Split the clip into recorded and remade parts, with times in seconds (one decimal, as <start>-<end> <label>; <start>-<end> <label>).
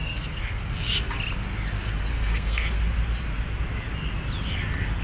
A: 0.0-0.6 remade; 0.6-2.1 recorded; 2.1-2.8 remade; 2.8-5.0 recorded